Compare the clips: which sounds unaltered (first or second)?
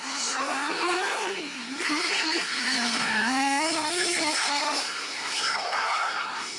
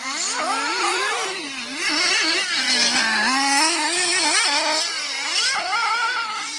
second